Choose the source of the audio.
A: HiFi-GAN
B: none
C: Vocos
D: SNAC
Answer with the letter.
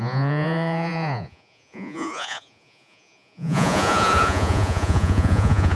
C